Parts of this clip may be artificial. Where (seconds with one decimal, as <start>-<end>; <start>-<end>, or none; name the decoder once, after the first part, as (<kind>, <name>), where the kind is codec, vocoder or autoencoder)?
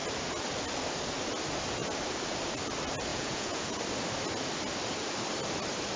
3.1-3.8 (vocoder, Vocos)